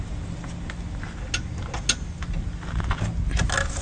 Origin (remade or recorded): recorded